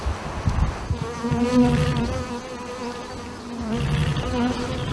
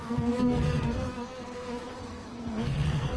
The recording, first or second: first